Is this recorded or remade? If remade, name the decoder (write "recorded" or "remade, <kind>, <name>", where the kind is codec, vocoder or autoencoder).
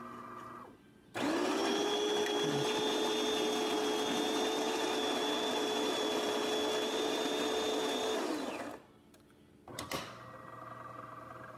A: recorded